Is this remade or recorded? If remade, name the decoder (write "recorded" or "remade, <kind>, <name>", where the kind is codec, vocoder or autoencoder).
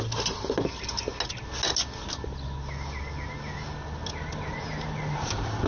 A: recorded